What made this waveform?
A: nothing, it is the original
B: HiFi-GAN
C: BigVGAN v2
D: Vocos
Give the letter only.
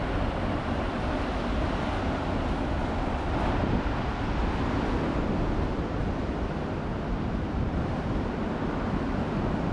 A